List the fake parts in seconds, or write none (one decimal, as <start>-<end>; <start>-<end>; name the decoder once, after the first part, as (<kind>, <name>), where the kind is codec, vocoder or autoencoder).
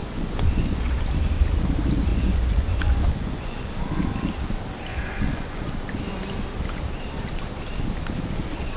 0.0-1.1 (vocoder, Vocos); 2.1-3.7; 4.9-5.6